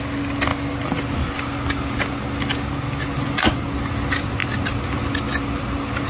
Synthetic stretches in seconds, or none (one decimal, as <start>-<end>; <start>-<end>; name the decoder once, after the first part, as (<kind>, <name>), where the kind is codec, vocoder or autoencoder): none